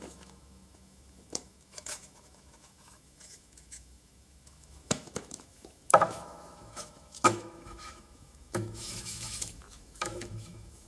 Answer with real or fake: fake